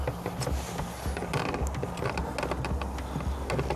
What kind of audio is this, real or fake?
real